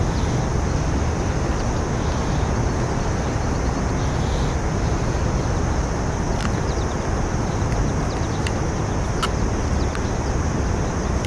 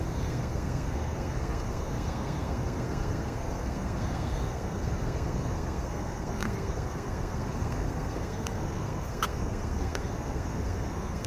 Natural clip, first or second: first